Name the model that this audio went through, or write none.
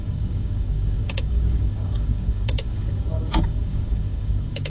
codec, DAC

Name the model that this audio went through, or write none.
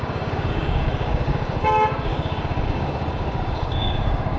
codec, DAC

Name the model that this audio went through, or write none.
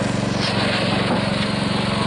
none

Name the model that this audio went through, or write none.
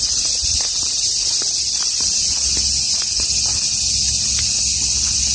none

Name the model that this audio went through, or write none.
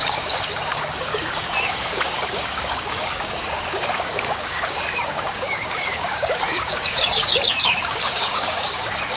codec, DAC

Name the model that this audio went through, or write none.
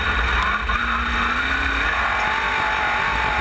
none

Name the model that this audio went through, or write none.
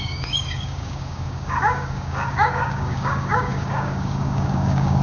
codec, DAC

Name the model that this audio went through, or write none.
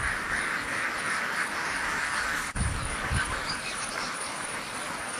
codec, DAC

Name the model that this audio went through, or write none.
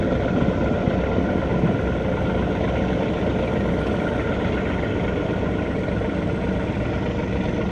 none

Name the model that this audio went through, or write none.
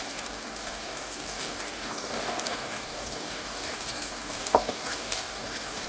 codec, DAC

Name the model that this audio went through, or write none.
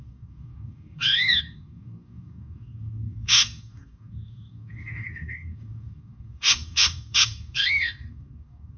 codec, DAC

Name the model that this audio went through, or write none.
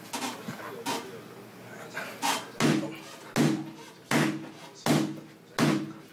none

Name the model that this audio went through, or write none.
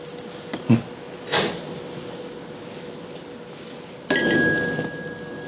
none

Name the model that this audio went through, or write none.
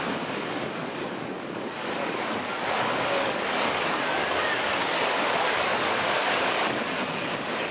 codec, DAC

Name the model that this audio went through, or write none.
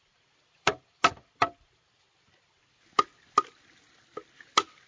none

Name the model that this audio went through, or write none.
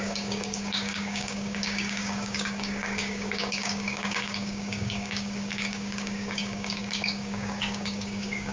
codec, DAC